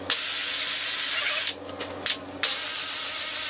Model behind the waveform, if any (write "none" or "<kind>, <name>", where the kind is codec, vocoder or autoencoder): none